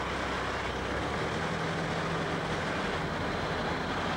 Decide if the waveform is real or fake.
real